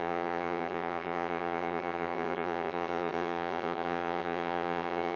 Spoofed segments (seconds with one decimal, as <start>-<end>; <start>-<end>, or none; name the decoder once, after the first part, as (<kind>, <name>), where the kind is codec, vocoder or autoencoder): 0.0-5.2 (vocoder, HiFi-GAN)